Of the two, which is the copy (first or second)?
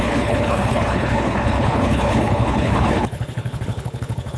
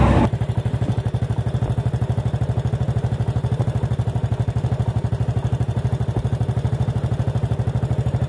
first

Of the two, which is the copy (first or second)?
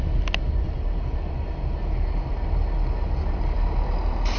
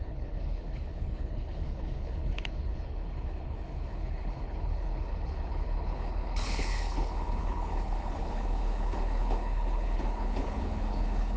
second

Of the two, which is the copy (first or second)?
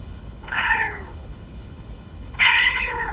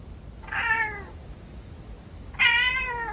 first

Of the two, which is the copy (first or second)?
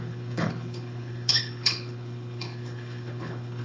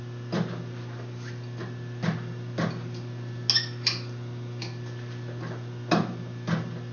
first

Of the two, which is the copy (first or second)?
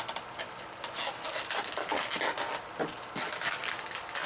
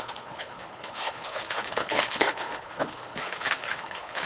second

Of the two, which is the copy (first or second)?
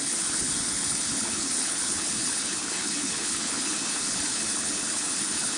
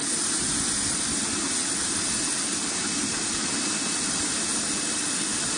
first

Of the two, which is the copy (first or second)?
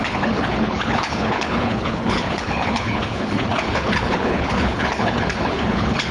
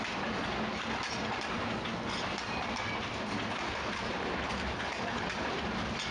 first